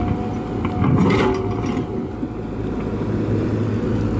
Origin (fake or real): real